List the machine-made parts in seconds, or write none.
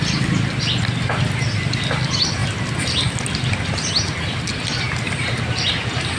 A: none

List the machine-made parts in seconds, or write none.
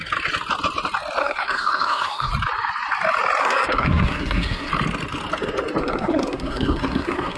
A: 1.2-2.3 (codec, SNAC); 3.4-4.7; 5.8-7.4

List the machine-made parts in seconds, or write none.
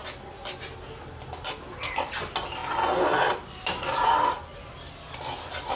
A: none